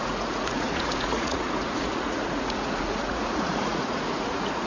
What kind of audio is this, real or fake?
fake